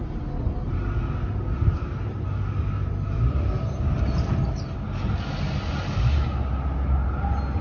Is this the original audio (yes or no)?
yes